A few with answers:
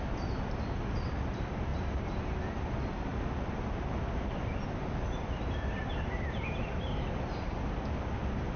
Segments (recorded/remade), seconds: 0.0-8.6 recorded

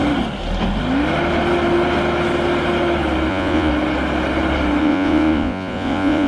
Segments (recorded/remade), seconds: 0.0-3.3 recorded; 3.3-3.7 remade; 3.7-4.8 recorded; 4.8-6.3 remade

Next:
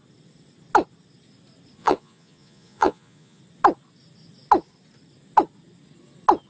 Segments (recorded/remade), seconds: 0.0-1.8 recorded; 1.8-3.4 remade; 3.4-6.5 recorded

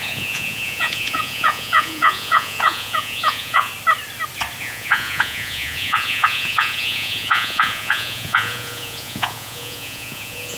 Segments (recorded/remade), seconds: 0.0-3.7 remade; 3.7-4.6 recorded; 4.6-10.6 remade